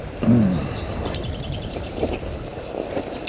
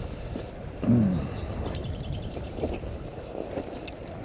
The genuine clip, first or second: first